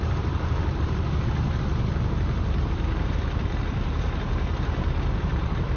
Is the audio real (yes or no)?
no